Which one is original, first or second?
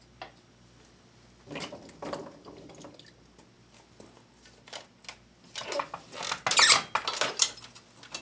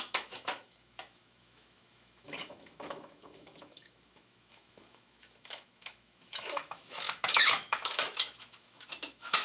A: first